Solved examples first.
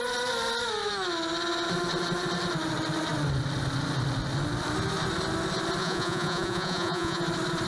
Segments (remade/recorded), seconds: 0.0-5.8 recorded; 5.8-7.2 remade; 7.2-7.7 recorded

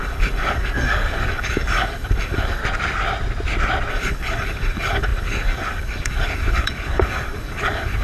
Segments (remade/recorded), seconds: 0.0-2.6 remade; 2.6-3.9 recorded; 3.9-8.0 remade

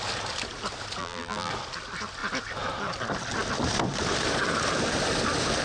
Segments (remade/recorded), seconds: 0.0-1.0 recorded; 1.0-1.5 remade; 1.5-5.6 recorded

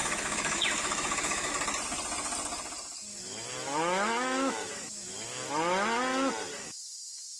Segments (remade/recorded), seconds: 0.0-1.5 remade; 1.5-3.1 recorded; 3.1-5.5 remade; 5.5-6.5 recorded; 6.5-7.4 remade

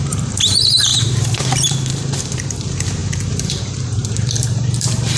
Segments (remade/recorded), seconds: 0.0-5.2 remade